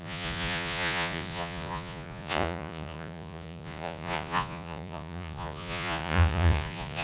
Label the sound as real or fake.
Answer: fake